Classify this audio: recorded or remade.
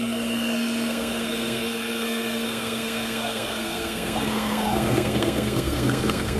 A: remade